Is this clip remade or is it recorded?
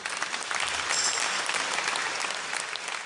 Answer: recorded